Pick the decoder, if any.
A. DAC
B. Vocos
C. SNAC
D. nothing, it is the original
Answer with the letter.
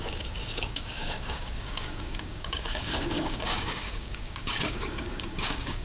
A